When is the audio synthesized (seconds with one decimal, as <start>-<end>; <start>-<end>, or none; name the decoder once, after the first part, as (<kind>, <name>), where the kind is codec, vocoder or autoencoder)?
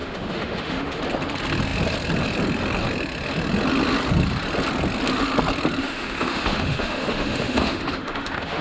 0.0-1.0 (autoencoder, DAC-VAE); 5.8-8.6